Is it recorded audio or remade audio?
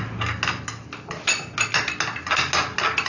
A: recorded